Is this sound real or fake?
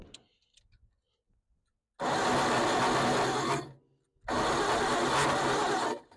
real